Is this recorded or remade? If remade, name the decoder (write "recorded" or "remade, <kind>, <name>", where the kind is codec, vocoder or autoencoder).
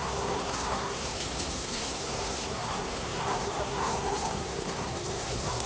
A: remade, codec, SNAC